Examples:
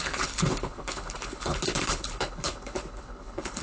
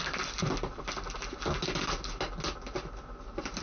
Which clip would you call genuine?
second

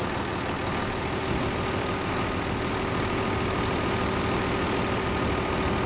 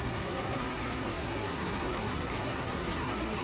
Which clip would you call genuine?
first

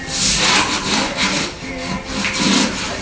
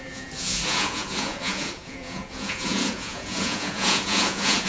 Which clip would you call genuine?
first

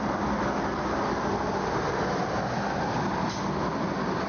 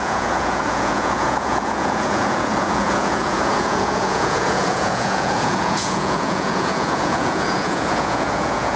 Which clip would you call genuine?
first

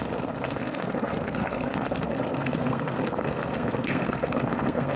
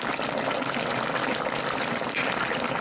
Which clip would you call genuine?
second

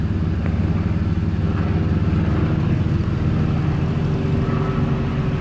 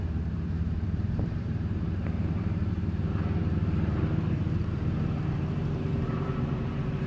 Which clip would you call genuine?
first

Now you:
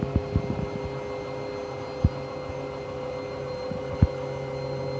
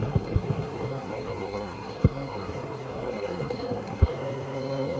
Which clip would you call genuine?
first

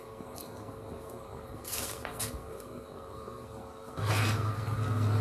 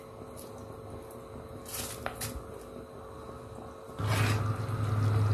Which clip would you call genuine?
second